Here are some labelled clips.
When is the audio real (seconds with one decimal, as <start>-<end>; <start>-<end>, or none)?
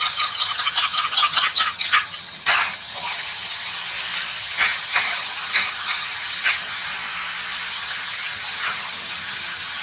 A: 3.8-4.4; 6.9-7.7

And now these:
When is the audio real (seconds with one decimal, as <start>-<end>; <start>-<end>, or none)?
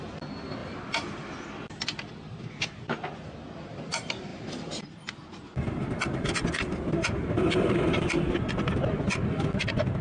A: 0.0-0.6; 1.4-4.3; 8.2-10.0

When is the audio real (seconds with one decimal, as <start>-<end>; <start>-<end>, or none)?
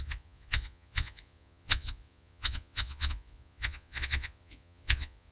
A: none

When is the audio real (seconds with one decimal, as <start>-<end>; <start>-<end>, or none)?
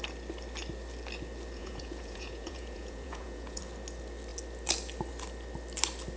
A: 0.0-1.6; 3.6-6.2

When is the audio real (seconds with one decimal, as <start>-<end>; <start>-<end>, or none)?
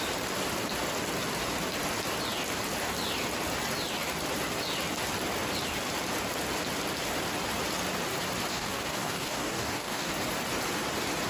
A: 0.0-8.5; 10.1-11.3